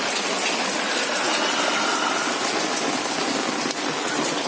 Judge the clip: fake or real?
real